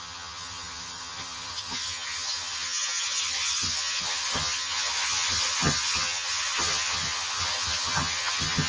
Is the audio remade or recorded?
remade